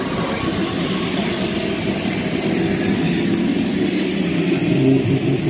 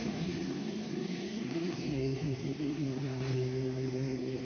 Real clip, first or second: first